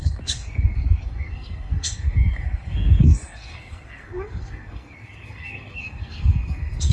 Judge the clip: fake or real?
fake